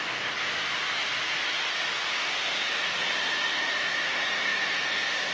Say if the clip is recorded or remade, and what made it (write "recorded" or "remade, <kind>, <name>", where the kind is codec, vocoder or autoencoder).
recorded